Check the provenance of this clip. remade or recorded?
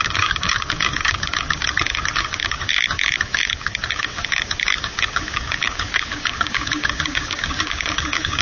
remade